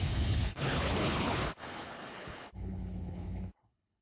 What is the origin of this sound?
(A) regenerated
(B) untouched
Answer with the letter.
A